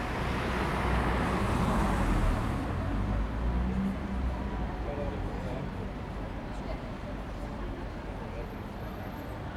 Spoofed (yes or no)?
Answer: no